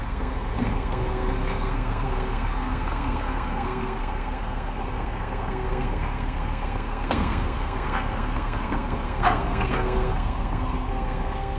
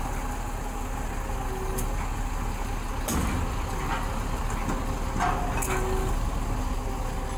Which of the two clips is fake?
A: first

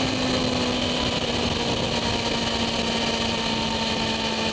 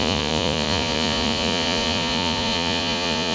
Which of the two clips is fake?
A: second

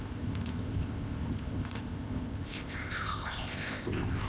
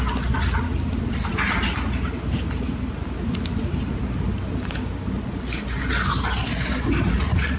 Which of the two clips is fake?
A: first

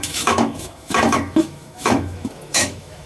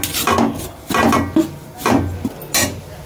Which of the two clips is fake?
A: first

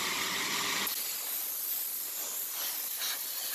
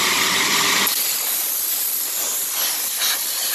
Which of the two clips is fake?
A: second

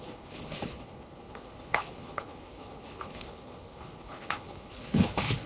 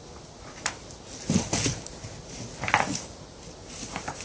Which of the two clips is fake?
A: first